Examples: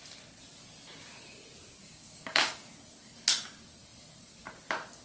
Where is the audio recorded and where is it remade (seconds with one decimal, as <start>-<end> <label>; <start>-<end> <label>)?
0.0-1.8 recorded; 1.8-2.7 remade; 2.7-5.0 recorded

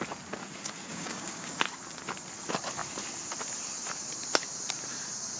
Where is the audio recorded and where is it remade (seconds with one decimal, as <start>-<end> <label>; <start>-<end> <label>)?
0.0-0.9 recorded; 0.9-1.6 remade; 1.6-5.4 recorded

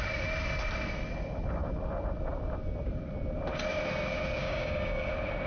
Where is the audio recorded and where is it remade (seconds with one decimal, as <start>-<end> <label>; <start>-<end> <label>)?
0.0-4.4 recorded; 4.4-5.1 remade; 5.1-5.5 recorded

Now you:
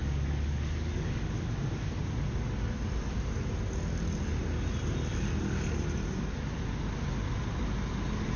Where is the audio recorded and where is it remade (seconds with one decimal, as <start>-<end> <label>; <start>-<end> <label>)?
0.0-2.0 remade; 2.0-8.4 recorded

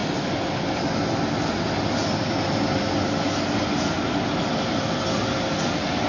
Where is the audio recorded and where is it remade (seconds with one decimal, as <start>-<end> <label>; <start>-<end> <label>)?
0.0-6.1 recorded

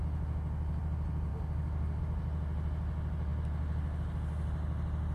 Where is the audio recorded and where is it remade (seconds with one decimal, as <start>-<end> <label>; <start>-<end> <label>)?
0.0-1.3 recorded; 1.3-2.0 remade; 2.0-5.1 recorded

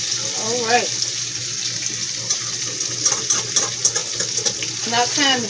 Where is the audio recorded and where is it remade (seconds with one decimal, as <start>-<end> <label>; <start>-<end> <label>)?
0.0-5.5 recorded